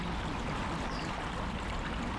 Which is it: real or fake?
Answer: real